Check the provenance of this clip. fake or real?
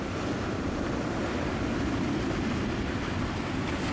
real